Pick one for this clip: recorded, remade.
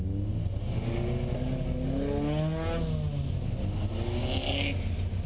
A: recorded